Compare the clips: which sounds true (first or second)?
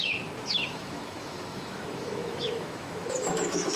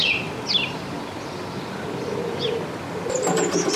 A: second